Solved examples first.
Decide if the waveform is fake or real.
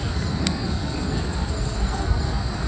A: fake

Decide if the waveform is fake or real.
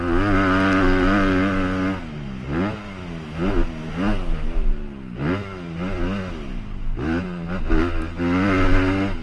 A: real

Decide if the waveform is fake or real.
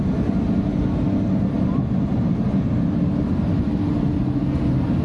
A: real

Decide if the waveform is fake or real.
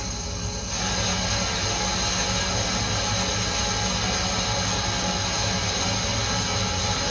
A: real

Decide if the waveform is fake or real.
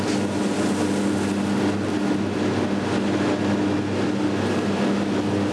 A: real